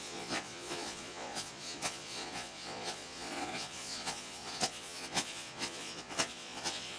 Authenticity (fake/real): fake